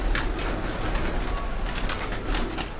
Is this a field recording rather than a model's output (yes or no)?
yes